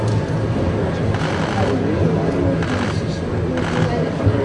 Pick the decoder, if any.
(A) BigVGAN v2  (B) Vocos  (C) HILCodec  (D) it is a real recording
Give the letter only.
D